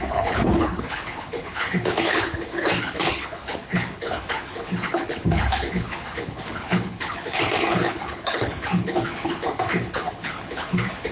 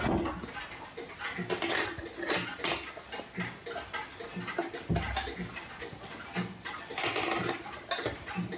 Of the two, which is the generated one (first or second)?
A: first